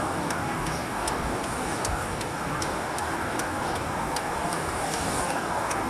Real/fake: fake